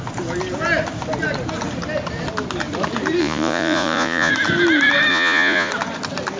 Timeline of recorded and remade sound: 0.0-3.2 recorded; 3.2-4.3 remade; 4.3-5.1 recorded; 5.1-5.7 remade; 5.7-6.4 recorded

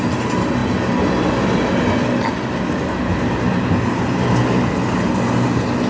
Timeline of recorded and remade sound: 0.0-5.9 recorded